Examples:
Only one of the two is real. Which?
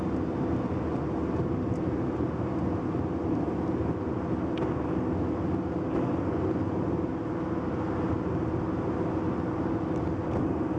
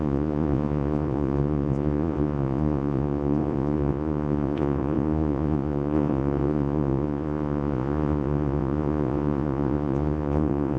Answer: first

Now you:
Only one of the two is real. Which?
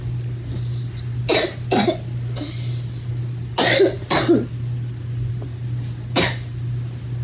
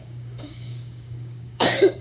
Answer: first